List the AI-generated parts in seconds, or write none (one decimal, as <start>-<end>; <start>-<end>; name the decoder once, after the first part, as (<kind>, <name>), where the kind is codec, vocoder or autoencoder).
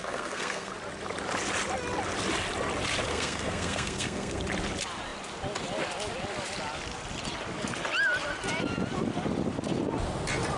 0.0-0.7 (codec, SNAC); 3.1-4.4